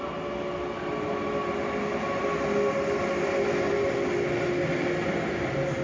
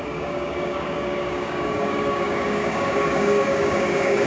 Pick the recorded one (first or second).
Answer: first